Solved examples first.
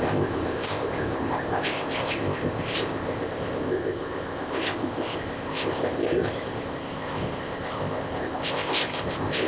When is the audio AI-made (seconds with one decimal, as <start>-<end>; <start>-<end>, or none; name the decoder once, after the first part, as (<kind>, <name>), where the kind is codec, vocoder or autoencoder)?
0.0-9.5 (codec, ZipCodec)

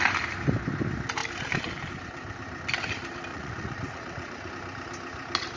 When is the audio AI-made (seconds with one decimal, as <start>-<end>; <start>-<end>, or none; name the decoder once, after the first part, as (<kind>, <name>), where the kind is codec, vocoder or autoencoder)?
3.3-4.5 (vocoder, Vocos)

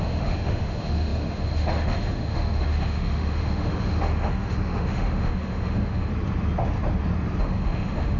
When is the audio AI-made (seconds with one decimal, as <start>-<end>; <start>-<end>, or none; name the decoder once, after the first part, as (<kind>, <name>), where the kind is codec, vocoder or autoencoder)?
0.0-6.1 (autoencoder, DAC-VAE); 7.4-8.2